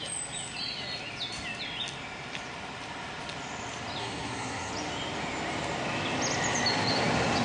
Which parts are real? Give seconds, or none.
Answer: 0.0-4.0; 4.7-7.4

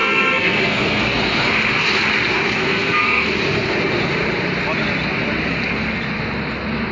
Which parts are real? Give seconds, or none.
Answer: 1.0-2.6; 3.3-6.9

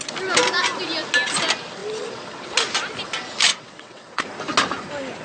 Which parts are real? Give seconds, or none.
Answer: 0.0-3.5; 4.2-5.2

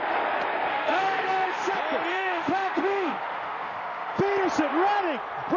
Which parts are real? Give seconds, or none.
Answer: 0.0-0.7; 1.7-2.1; 4.2-5.6

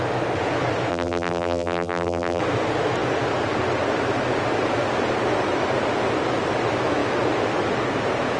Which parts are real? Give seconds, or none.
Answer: 0.0-0.9; 2.4-8.4